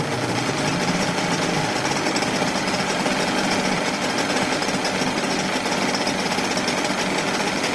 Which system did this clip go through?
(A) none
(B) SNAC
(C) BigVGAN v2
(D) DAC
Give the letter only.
A